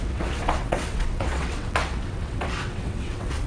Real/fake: fake